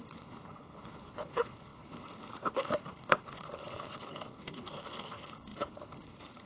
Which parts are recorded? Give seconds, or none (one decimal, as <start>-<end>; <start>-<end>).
none